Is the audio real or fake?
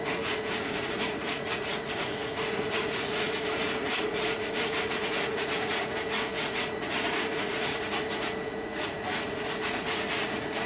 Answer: fake